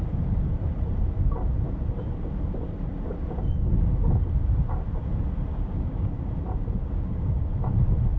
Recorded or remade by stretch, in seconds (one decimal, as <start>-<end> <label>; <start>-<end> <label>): 0.0-5.5 recorded; 5.5-6.2 remade; 6.2-6.8 recorded; 6.8-7.4 remade; 7.4-8.2 recorded